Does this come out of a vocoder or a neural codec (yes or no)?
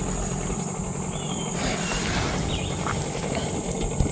no